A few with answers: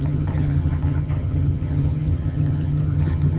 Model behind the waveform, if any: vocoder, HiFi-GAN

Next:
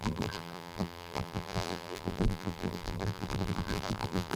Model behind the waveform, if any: vocoder, BigVGAN v2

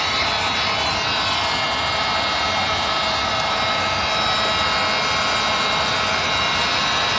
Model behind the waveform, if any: none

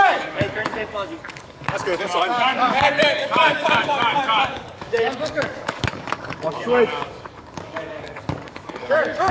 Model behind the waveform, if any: codec, DAC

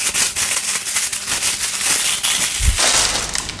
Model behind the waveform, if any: none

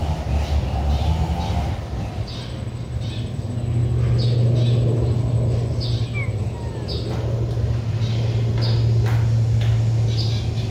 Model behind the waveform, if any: none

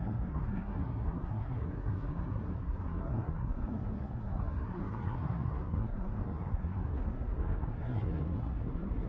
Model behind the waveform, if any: codec, SNAC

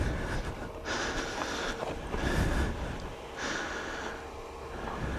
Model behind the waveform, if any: none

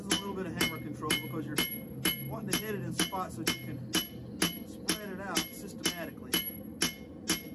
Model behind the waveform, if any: none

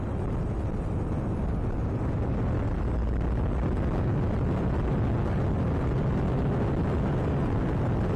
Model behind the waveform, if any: none